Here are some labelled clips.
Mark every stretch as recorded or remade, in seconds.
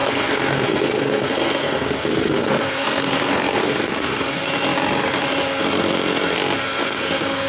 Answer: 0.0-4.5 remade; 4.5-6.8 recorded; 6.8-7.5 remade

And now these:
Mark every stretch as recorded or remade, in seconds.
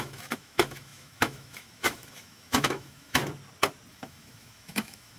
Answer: 0.0-3.2 remade; 3.2-3.9 recorded; 3.9-5.2 remade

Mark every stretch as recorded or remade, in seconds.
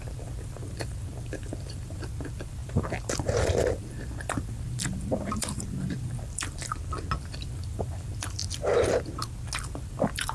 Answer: 0.0-6.7 remade; 6.7-7.2 recorded; 7.2-8.4 remade; 8.4-9.6 recorded; 9.6-10.3 remade